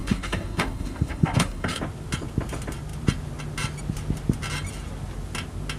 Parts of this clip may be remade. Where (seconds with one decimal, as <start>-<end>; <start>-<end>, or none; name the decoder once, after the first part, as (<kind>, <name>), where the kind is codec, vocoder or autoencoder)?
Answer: 0.0-1.8 (codec, SNAC)